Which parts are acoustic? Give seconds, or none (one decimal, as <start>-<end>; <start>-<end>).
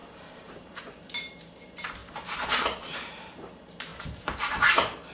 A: none